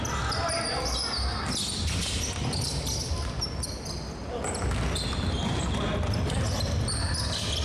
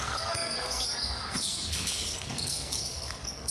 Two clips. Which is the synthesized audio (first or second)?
second